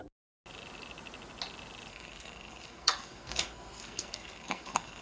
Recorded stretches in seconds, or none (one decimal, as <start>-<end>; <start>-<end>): 0.0-1.9